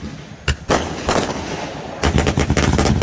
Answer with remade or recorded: recorded